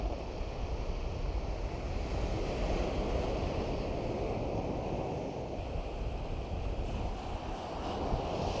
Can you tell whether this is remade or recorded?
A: recorded